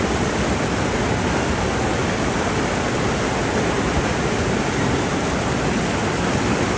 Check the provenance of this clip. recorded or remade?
recorded